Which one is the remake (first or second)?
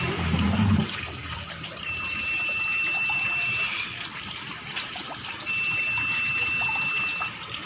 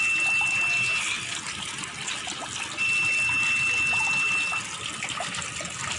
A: first